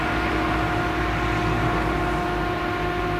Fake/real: real